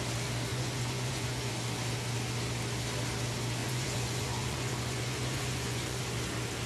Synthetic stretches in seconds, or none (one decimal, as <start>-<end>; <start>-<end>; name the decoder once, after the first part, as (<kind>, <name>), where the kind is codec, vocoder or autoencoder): 0.5-1.5 (vocoder, Vocos); 3.6-6.0